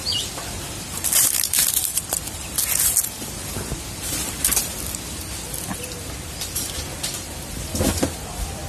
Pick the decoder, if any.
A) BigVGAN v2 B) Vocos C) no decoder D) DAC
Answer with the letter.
A